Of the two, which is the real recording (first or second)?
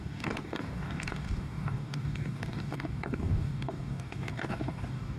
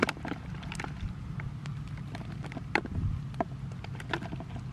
second